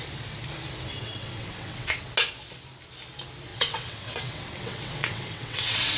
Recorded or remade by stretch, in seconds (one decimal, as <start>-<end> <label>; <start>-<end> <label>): 0.0-0.9 recorded; 0.9-2.1 remade; 2.1-3.5 recorded; 3.5-6.0 remade